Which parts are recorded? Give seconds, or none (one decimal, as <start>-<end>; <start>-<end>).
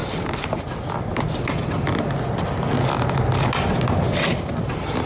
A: 0.0-5.1